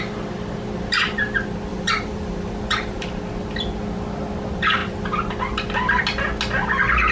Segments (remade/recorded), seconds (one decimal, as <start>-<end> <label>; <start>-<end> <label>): 0.0-1.7 recorded; 1.7-3.0 remade; 3.0-7.1 recorded